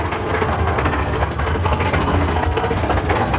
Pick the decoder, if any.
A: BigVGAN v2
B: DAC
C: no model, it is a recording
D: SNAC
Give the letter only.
D